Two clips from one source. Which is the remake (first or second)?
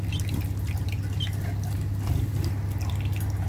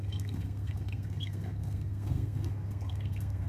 second